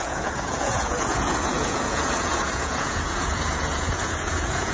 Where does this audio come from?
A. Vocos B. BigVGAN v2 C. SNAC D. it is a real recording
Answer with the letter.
A